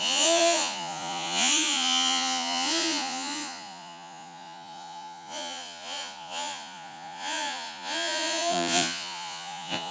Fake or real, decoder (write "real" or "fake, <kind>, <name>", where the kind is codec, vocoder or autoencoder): fake, vocoder, Vocos